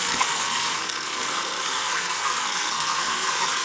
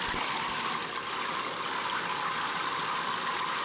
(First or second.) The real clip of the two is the second